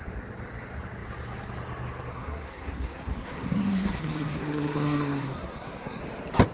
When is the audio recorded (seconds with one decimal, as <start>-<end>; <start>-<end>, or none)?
0.0-2.1; 6.0-6.5